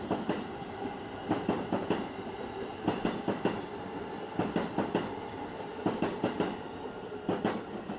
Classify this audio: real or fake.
real